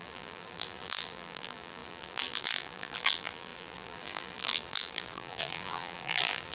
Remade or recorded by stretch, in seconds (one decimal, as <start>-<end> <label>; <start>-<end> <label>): 0.0-6.5 remade